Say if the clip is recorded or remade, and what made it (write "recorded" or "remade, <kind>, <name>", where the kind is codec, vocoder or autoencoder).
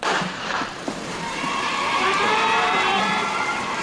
remade, vocoder, BigVGAN v2